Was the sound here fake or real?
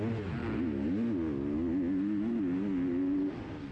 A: real